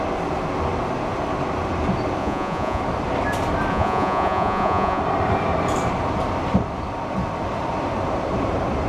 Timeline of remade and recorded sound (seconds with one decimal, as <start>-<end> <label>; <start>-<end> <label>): 0.0-2.2 recorded; 2.2-2.8 remade; 2.8-3.7 recorded; 3.7-5.0 remade; 5.0-8.9 recorded